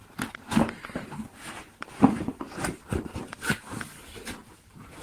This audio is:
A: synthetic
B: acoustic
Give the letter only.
A